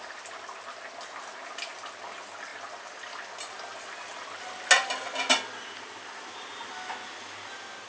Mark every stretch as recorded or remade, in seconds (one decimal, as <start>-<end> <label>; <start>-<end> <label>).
0.0-7.9 recorded